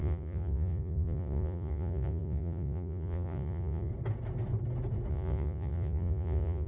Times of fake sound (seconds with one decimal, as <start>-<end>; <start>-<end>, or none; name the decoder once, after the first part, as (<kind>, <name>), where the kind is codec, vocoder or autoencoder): 0.0-3.9 (vocoder, Vocos); 5.1-6.7